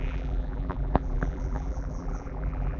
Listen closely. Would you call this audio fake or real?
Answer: fake